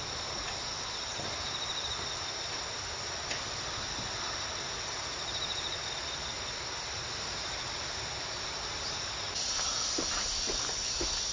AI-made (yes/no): no